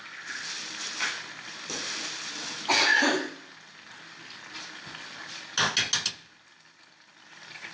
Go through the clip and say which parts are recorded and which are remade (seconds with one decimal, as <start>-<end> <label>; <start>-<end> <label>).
0.0-7.7 recorded